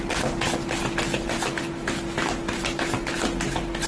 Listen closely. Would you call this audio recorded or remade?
recorded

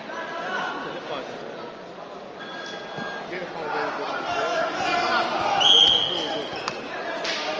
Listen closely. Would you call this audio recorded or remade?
recorded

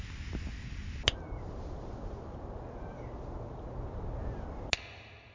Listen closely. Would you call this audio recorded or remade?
recorded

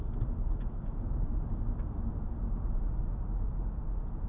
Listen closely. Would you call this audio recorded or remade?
recorded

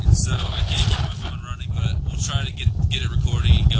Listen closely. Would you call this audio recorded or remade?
recorded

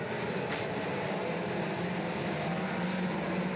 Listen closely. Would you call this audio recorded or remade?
remade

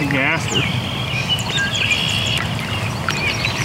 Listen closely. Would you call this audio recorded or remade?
recorded